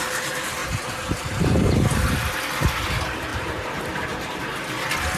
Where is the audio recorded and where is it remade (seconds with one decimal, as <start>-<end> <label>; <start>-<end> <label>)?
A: 0.0-0.6 recorded; 0.6-1.7 remade; 1.7-3.3 recorded; 3.3-4.4 remade; 4.4-5.2 recorded

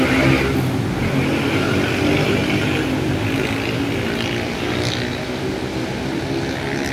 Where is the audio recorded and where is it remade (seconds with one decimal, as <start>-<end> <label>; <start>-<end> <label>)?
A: 0.0-6.9 recorded